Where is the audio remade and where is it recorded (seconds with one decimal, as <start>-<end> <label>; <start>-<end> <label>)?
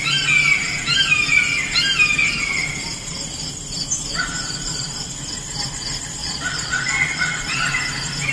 0.0-6.2 recorded; 6.2-7.4 remade; 7.4-8.3 recorded